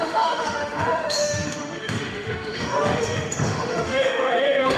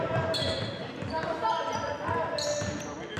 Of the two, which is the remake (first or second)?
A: first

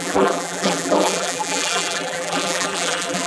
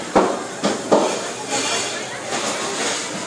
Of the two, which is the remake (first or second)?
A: first